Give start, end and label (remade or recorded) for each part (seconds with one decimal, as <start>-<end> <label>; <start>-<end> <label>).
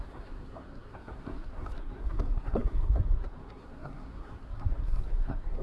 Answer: 0.0-5.6 remade